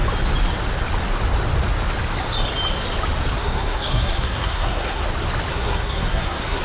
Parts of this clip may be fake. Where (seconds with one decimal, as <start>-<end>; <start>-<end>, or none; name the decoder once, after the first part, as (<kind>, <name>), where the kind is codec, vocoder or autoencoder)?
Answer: 3.4-5.0 (codec, SNAC); 5.5-6.6